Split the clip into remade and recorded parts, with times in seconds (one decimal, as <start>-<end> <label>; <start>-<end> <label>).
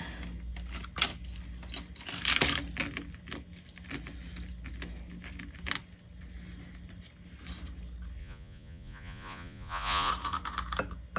0.0-8.2 recorded; 8.2-10.1 remade; 10.1-11.2 recorded